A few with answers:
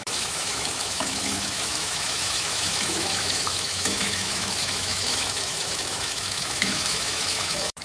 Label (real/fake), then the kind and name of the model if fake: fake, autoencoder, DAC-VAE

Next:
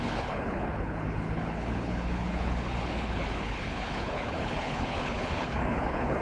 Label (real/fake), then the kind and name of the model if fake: fake, codec, HILCodec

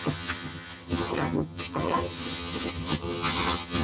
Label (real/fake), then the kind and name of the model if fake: fake, vocoder, HiFi-GAN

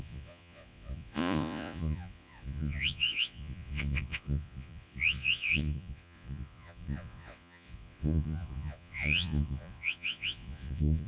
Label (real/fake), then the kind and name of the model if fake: fake, vocoder, Vocos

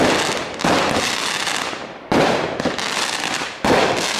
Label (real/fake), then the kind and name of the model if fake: real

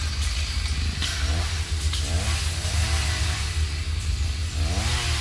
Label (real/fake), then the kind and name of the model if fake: real